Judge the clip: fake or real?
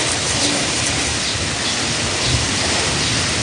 real